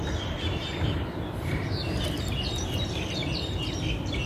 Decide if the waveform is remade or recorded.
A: remade